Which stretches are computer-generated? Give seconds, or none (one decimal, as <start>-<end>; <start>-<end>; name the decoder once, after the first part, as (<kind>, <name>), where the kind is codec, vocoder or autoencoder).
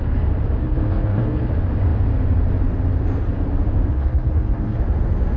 0.6-1.5 (codec, SNAC); 3.9-4.8